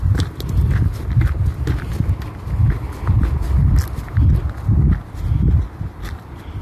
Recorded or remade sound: recorded